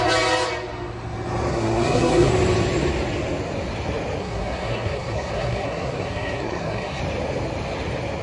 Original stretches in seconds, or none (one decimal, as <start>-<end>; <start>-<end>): 0.0-1.5; 2.3-4.2; 7.0-8.2